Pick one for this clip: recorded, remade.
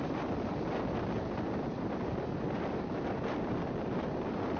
remade